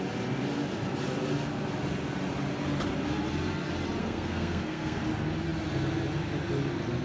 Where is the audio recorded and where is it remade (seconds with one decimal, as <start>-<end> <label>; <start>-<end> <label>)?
0.0-4.0 recorded; 4.0-5.0 remade; 5.0-7.0 recorded

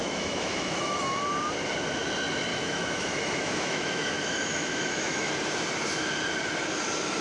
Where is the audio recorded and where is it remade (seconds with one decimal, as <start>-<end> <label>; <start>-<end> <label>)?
0.0-1.2 remade; 1.2-2.5 recorded; 2.5-5.3 remade; 5.3-7.2 recorded